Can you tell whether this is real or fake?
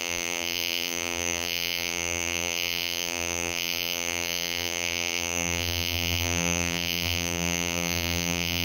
fake